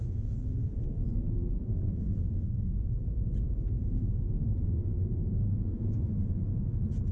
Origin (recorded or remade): remade